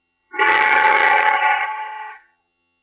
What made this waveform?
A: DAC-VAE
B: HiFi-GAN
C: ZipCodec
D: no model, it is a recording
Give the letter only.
B